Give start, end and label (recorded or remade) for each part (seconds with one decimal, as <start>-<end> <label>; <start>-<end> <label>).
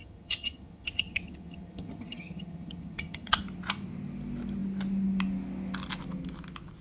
0.0-3.4 remade; 3.4-6.8 recorded